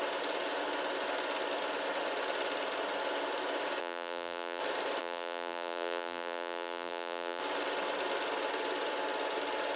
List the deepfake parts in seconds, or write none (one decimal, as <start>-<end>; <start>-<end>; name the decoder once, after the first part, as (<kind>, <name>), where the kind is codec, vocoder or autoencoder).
3.8-4.6 (vocoder, BigVGAN v2); 5.0-7.4